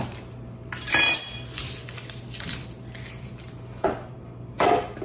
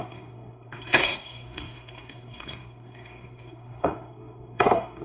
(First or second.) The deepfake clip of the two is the second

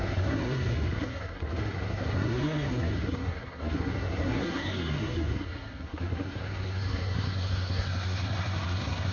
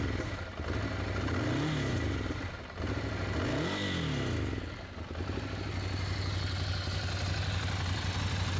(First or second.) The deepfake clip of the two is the first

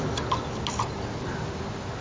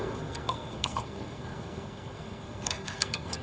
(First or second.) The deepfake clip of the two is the second